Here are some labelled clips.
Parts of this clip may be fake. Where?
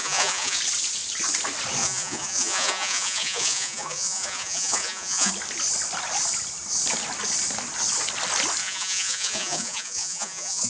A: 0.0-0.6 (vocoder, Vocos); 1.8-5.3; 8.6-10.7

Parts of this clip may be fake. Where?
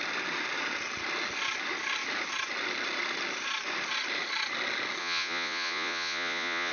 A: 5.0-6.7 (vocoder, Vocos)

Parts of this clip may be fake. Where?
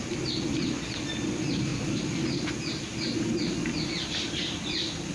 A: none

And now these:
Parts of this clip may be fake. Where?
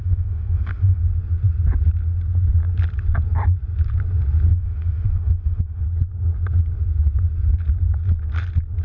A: 0.0-1.0 (autoencoder, DAC-VAE); 4.5-5.8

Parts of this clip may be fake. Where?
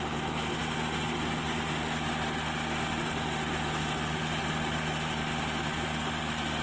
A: none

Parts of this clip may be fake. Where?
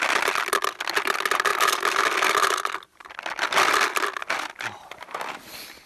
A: none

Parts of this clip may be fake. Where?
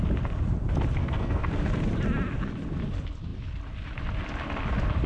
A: 1.0-1.6 (codec, SNAC)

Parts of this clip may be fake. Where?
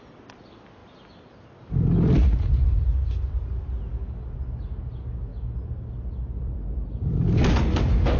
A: none